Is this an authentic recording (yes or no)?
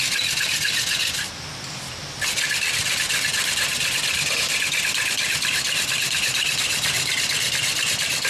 yes